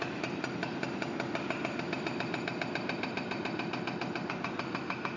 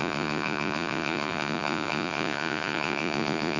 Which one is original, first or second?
first